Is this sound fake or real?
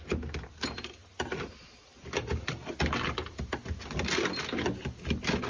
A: real